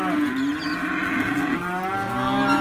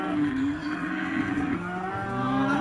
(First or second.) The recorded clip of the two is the first